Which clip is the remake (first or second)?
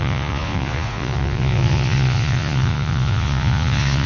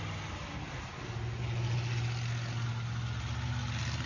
first